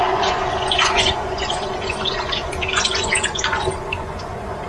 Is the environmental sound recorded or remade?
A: remade